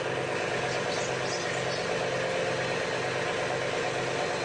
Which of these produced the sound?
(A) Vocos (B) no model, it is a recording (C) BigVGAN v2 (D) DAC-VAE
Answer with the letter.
B